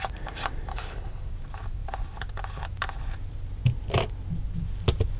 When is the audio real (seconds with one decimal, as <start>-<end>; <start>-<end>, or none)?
0.0-0.7; 1.3-5.2